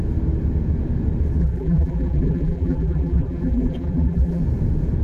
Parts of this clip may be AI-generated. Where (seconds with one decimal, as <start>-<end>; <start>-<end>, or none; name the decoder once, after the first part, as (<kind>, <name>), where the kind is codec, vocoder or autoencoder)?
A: 1.4-4.4 (vocoder, BigVGAN v2)